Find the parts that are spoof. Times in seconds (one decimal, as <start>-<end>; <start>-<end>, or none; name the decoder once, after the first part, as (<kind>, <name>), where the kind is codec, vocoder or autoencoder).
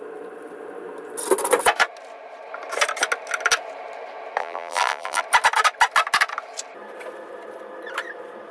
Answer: 4.4-5.2 (vocoder, BigVGAN v2)